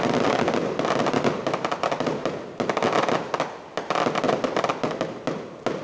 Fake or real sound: real